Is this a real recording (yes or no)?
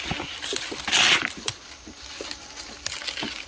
yes